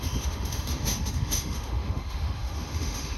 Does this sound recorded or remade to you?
remade